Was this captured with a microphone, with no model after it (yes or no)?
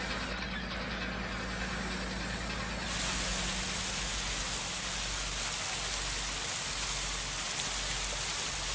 yes